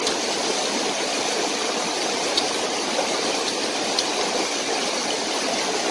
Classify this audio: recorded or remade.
recorded